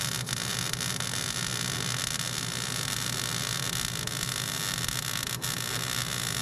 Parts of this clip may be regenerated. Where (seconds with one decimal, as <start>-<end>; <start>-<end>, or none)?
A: none